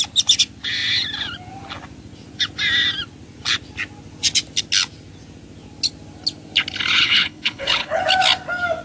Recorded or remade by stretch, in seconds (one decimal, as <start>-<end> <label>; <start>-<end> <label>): 0.0-7.0 recorded; 7.0-8.0 remade; 8.0-8.8 recorded